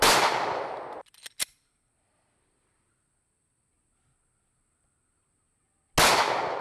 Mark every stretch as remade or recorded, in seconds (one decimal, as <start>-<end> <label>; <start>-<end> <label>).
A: 0.0-6.6 recorded